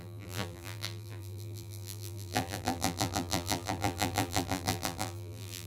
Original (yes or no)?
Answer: no